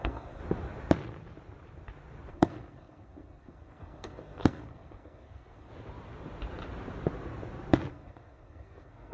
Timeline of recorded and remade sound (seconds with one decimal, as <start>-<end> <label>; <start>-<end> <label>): 0.0-0.4 remade; 0.4-2.3 recorded; 2.3-5.7 remade; 5.7-7.9 recorded; 7.9-9.1 remade